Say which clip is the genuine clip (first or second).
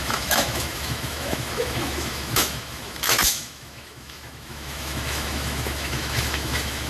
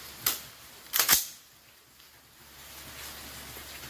second